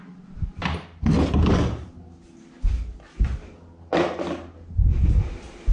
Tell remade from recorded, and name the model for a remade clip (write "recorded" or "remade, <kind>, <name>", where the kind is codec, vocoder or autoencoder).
recorded